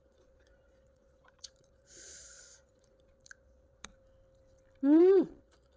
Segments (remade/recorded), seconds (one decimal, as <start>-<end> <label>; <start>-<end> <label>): 0.0-3.9 remade; 3.9-5.0 recorded; 5.0-5.8 remade

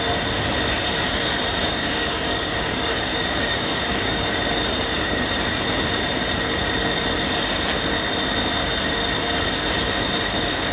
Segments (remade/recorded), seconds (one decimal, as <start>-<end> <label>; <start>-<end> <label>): 0.0-1.6 recorded; 1.6-5.2 remade; 5.2-10.7 recorded

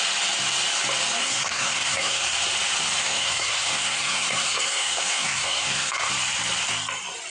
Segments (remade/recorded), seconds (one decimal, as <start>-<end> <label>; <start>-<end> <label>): 0.0-1.2 recorded; 1.2-2.2 remade; 2.2-3.0 recorded; 3.0-6.1 remade; 6.1-7.3 recorded

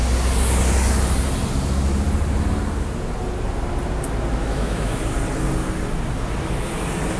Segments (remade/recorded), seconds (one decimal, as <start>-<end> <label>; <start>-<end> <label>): 0.0-4.4 recorded; 4.4-5.0 remade; 5.0-7.2 recorded

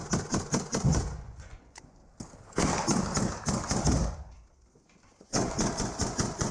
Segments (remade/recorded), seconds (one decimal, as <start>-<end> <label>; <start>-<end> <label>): 0.0-0.9 recorded; 0.9-2.0 remade; 2.0-5.2 recorded; 5.2-6.5 remade

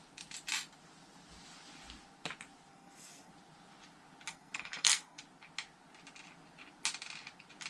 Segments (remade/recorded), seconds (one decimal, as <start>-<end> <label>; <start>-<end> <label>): 0.0-2.7 recorded; 2.7-3.3 remade; 3.3-4.3 recorded; 4.3-5.2 remade; 5.2-7.7 recorded

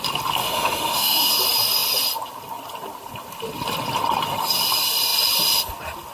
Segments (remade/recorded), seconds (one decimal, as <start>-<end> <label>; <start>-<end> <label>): 0.0-0.4 recorded; 0.4-1.3 remade; 1.3-6.1 recorded